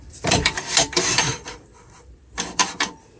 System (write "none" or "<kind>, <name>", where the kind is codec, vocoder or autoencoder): vocoder, BigVGAN v2